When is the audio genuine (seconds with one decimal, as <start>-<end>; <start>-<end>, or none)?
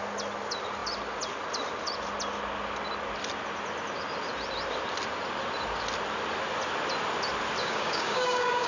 0.0-7.6